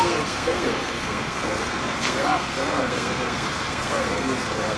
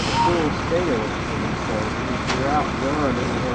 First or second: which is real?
second